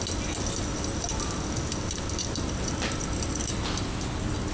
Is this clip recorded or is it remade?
recorded